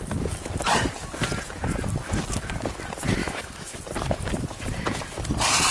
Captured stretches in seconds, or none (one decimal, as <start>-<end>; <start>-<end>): 0.0-3.2; 3.8-5.7